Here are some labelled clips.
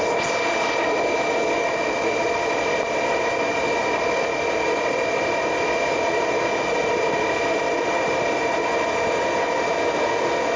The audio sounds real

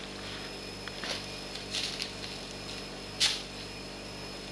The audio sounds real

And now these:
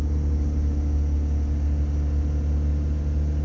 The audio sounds real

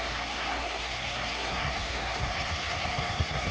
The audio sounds fake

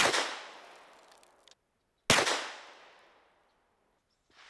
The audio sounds real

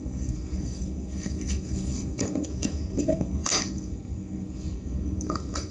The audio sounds fake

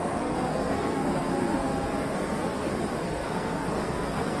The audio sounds fake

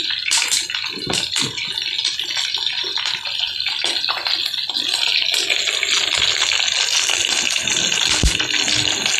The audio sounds real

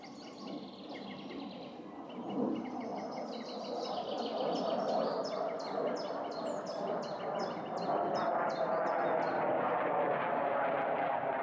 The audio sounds real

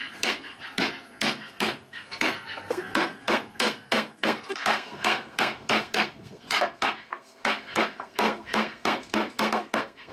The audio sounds fake